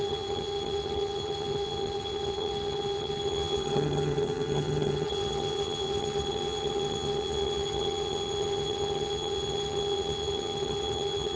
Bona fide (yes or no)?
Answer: no